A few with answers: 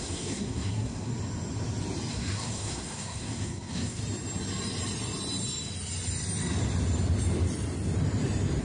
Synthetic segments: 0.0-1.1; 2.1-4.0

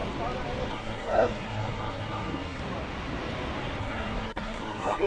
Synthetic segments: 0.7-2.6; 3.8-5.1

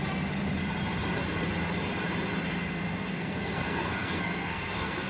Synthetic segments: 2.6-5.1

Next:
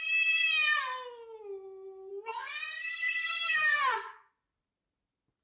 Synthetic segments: 2.1-4.3